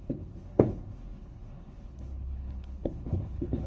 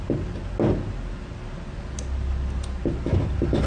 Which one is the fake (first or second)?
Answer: first